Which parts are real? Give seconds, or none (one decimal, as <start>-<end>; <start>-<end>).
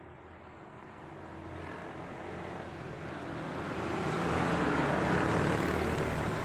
0.0-0.4; 1.1-6.4